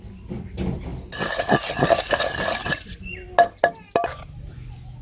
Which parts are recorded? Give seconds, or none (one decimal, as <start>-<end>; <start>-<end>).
0.0-5.0